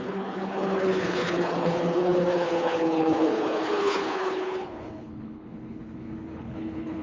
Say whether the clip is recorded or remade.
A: remade